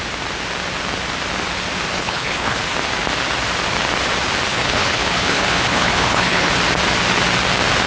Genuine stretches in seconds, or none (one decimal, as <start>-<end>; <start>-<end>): 0.0-1.9; 2.6-4.5; 6.5-7.9